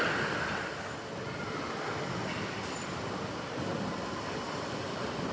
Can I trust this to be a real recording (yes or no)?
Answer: yes